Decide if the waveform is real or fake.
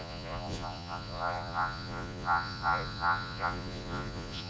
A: fake